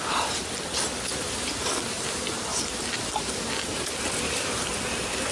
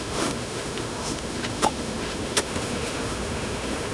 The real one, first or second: first